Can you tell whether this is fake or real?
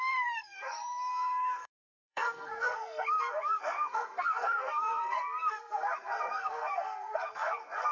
fake